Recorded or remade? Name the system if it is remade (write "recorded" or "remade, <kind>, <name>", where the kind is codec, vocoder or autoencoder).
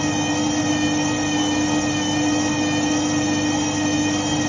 recorded